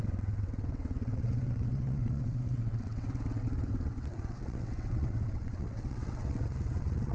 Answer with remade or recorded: remade